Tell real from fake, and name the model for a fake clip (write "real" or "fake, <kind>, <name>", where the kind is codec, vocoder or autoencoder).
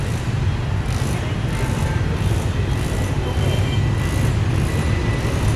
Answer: real